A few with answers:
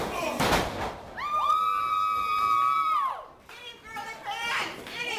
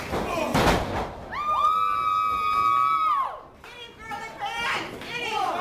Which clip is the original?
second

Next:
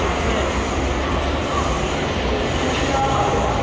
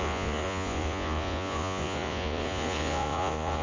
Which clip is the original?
first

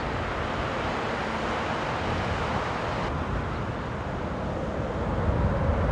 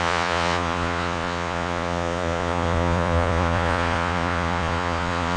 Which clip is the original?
first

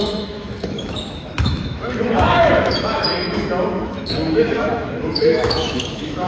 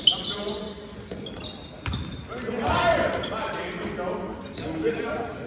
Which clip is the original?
second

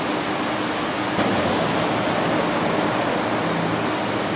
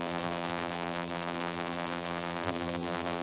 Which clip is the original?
first